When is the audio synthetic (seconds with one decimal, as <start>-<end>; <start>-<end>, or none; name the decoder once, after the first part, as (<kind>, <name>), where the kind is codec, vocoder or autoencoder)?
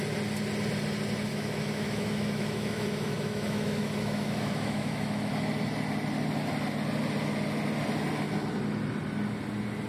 1.3-5.3 (autoencoder, DAC-VAE)